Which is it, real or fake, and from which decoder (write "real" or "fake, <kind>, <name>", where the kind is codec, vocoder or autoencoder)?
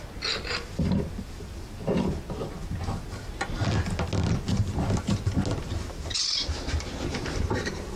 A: real